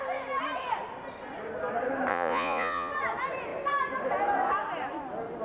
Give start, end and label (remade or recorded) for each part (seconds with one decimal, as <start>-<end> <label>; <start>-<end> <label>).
0.0-2.1 recorded; 2.1-2.9 remade; 2.9-5.4 recorded

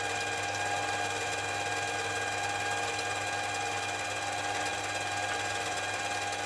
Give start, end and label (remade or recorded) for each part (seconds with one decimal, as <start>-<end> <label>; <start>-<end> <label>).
0.0-6.5 recorded

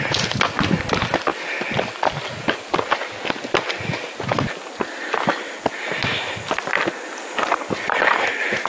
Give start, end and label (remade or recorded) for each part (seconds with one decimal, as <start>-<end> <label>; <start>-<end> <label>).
0.0-8.7 recorded

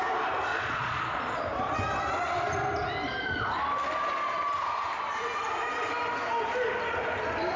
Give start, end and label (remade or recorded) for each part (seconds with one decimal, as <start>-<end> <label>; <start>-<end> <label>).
0.0-0.5 recorded; 0.5-1.4 remade; 1.4-7.6 recorded